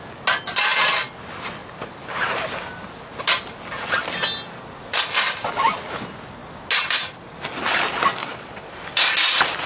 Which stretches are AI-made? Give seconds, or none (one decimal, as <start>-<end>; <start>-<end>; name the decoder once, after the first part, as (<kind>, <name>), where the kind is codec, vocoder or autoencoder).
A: 8.2-8.7 (vocoder, Vocos)